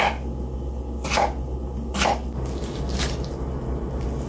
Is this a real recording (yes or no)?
yes